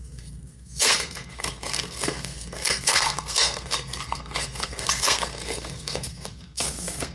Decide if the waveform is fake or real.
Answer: fake